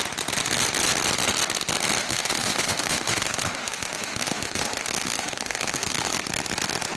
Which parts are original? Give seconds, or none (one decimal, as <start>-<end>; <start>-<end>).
0.0-2.0; 6.2-7.0